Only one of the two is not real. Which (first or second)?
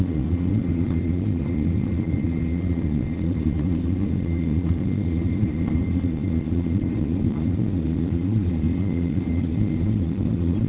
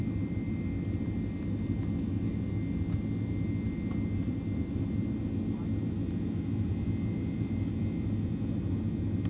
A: first